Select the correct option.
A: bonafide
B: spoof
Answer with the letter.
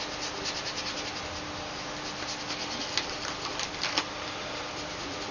A